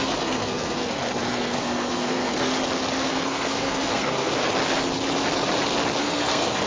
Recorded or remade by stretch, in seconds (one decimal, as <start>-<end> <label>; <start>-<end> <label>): 0.0-2.5 remade; 2.5-3.1 recorded; 3.1-4.3 remade; 4.3-6.0 recorded; 6.0-6.7 remade